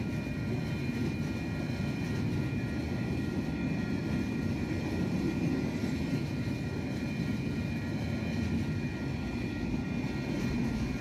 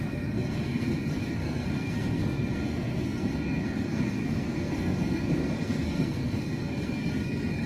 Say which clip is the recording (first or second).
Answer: first